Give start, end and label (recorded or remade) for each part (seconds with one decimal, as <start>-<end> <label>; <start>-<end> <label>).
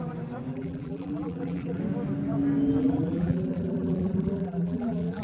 0.0-0.5 recorded; 0.5-1.8 remade; 1.8-2.8 recorded; 2.8-5.2 remade